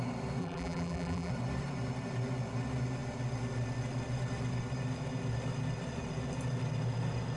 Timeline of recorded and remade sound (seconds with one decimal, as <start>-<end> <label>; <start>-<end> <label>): 0.0-0.4 recorded; 0.4-1.3 remade; 1.3-7.4 recorded